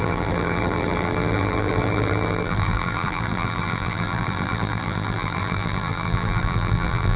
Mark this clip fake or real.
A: fake